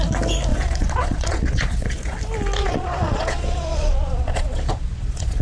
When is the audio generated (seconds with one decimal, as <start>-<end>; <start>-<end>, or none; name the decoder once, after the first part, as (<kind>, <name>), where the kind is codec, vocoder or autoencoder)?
0.5-2.2 (vocoder, Vocos); 2.6-5.4